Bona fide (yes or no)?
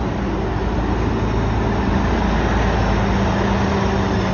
yes